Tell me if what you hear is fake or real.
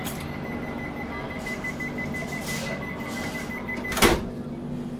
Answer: real